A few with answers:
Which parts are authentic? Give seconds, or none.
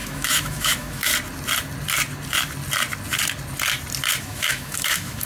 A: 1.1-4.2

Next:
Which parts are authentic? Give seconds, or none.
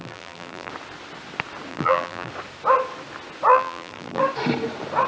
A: 0.7-1.7; 2.3-3.5; 4.2-5.1